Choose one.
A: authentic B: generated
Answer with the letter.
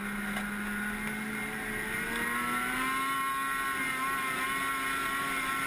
A